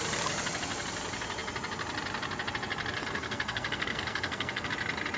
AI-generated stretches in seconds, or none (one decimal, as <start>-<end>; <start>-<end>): 3.0-4.7